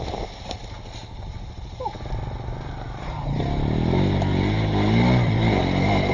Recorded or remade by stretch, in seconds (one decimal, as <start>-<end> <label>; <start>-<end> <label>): 0.0-1.0 recorded; 1.0-1.8 remade; 1.8-6.1 recorded